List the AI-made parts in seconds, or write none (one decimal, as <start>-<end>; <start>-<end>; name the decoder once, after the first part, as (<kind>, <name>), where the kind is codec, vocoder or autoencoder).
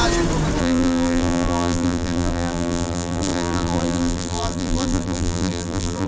0.6-6.1 (vocoder, BigVGAN v2)